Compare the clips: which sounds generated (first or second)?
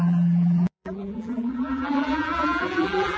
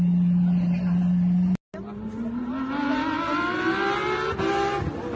first